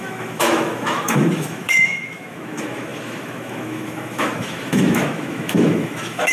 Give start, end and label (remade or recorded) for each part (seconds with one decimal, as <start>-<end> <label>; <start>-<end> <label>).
0.0-6.3 remade